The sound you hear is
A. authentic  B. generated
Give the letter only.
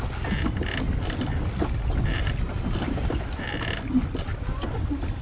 A